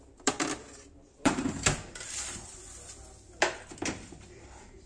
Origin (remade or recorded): remade